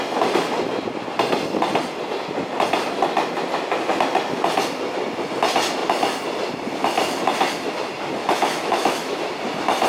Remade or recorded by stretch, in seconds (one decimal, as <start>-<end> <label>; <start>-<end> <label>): 0.0-8.2 recorded; 8.2-9.2 remade; 9.2-9.9 recorded

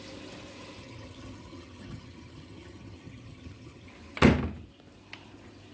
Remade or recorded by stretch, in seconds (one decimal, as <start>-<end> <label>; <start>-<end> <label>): 0.0-0.8 recorded; 0.8-3.9 remade; 3.9-5.7 recorded

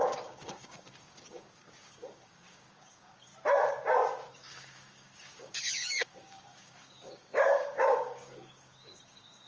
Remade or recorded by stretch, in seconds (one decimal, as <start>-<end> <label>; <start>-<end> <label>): 0.0-3.3 remade; 3.3-4.3 recorded; 4.3-9.5 remade